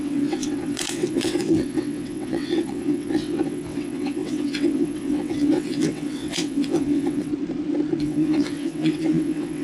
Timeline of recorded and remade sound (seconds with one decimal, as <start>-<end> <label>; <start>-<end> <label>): 0.0-7.3 remade; 7.3-8.0 recorded; 8.0-9.6 remade